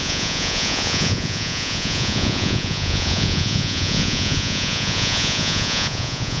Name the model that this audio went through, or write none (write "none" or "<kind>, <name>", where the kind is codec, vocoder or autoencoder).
vocoder, Vocos